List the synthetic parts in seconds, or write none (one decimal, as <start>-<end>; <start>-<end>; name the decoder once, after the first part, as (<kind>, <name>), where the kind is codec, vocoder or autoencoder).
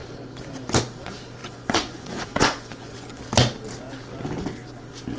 1.4-3.2 (vocoder, Vocos)